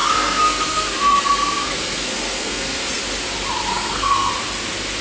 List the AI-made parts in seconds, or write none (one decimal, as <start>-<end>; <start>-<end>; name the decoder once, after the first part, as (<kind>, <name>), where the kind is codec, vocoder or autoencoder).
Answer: 0.0-3.0 (codec, SNAC); 3.7-4.3